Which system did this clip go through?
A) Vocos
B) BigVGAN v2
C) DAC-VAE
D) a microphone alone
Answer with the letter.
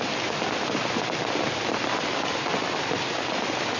D